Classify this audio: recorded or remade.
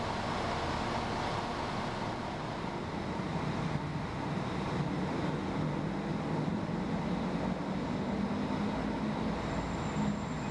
recorded